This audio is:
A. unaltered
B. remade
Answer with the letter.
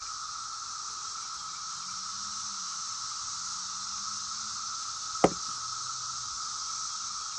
A